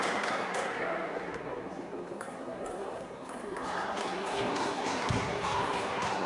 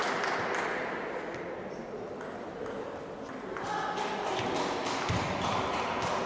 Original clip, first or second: second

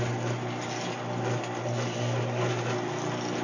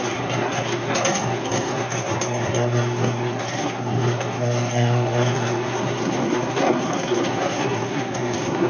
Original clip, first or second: first